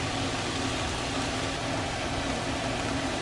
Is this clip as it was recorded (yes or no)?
yes